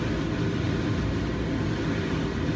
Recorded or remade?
recorded